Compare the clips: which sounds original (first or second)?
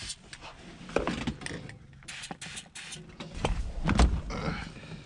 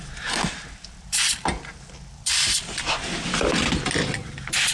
first